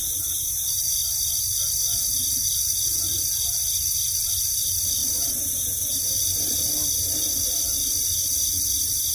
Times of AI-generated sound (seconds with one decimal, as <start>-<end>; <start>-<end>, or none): none

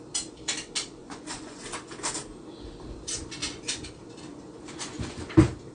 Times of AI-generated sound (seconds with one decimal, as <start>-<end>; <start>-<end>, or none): 1.0-1.6; 3.4-3.9; 4.3-5.2

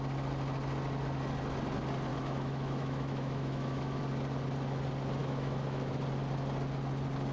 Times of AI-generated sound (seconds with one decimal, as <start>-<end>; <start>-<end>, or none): 2.1-4.0; 5.2-5.9

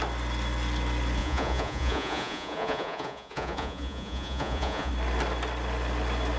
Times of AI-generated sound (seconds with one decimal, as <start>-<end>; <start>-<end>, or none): 1.2-4.9

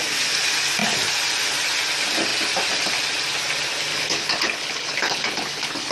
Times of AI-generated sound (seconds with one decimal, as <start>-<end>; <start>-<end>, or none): 3.9-5.9

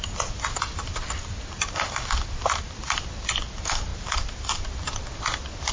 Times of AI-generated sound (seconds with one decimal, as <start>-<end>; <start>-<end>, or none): none

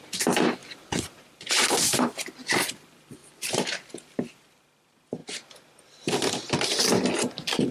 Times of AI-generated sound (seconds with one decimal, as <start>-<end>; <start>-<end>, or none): 0.6-1.5; 3.2-4.4